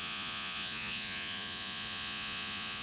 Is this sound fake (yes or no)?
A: yes